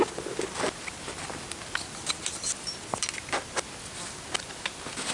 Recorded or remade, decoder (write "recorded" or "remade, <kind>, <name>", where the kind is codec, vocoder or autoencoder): recorded